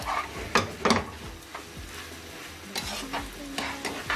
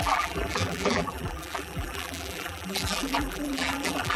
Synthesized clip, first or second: second